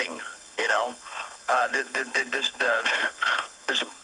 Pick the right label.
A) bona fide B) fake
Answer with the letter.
B